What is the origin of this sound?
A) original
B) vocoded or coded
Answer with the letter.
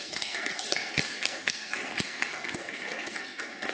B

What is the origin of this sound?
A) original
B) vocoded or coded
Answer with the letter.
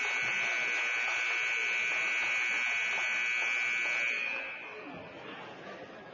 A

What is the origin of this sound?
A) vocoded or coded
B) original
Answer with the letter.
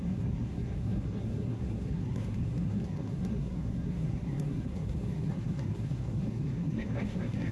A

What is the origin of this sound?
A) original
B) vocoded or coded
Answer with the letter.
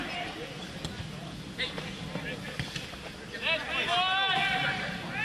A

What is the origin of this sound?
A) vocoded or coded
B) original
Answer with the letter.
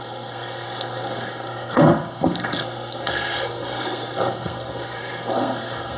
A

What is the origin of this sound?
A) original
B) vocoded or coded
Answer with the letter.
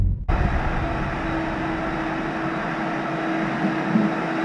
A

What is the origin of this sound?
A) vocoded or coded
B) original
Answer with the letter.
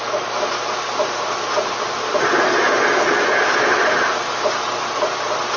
B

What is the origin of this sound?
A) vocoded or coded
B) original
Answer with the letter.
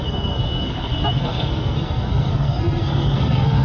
A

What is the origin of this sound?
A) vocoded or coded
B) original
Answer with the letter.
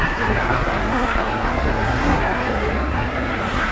A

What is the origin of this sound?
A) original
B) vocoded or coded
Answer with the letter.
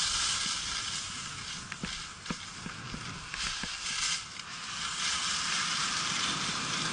A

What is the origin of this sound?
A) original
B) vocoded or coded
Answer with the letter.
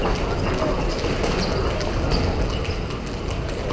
A